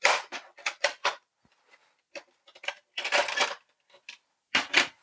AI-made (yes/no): yes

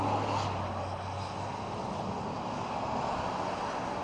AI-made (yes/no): no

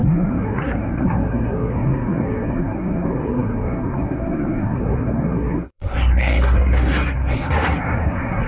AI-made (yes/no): yes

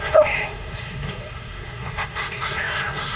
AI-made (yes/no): yes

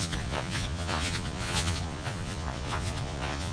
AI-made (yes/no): yes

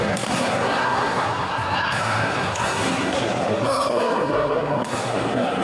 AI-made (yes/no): yes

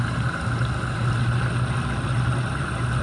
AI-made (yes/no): no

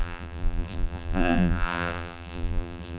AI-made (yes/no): yes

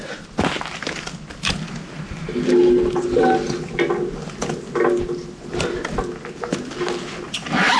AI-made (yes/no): no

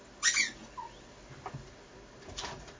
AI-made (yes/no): no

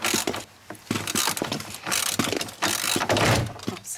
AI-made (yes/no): no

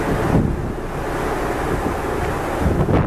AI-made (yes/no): no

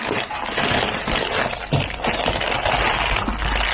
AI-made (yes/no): no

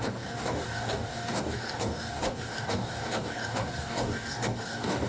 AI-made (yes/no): yes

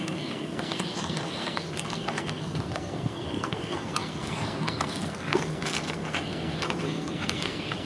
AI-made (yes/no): yes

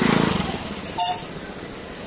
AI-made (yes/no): no